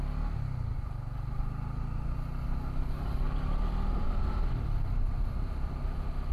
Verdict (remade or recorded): recorded